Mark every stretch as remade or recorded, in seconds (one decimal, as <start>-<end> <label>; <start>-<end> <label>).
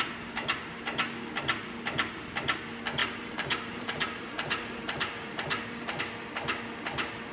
0.0-3.0 recorded; 3.0-6.0 remade; 6.0-7.3 recorded